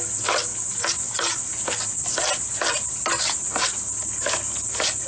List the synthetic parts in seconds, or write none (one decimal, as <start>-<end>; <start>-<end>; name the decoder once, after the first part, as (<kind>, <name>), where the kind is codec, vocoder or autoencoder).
none